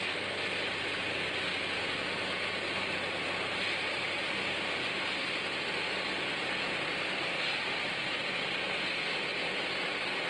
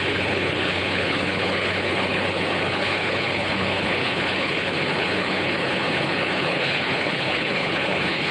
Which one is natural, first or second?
first